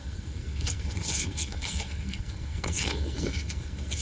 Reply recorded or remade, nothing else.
remade